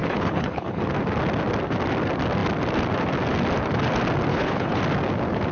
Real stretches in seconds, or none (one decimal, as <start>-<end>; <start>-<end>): 0.8-4.3; 4.8-5.5